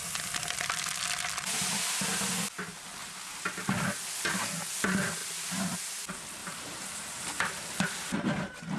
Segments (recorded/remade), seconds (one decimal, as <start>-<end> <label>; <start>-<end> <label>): 0.0-3.0 recorded; 3.0-3.7 remade; 3.7-5.2 recorded; 5.2-5.8 remade; 5.8-6.4 recorded; 6.4-8.8 remade